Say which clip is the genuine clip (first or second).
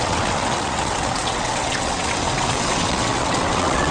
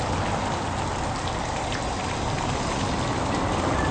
second